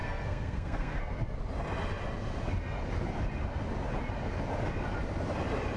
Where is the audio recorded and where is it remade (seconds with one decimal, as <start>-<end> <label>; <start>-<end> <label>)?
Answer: 0.0-1.0 remade; 1.0-5.8 recorded